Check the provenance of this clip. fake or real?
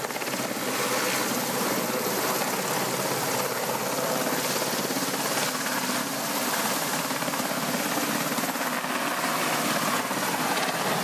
real